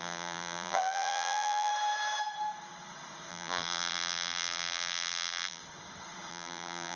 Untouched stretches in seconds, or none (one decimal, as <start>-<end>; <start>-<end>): 1.7-3.3; 5.6-6.3